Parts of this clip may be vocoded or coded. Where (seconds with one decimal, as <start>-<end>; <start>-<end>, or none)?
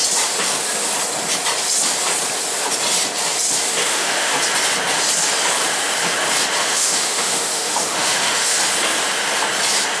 3.8-4.3; 6.6-8.6